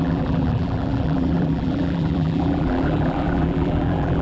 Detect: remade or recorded remade